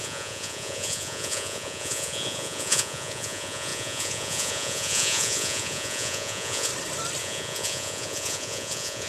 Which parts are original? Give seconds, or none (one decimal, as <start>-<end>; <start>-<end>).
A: 6.7-7.2